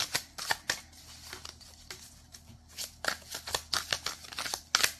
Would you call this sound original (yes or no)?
yes